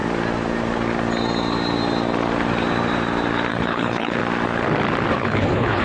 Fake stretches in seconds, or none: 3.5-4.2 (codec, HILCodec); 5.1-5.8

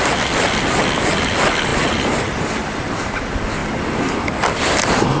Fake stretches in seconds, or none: none

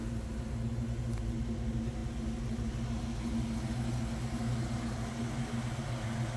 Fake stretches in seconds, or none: none

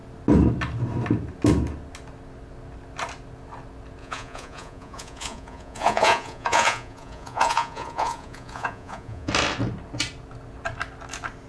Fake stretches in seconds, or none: 4.0-9.3 (vocoder, Vocos)

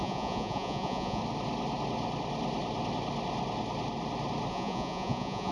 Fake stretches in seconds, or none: 0.0-1.2 (vocoder, Vocos); 4.5-5.5